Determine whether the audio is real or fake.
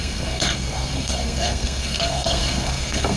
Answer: fake